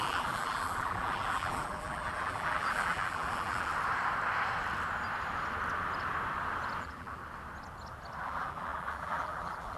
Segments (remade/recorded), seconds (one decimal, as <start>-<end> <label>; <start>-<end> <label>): 0.0-3.7 remade; 3.7-6.8 recorded; 6.8-7.2 remade; 7.2-8.2 recorded; 8.2-9.8 remade